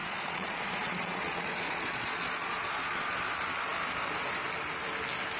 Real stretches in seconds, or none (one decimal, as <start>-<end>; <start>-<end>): 3.2-5.4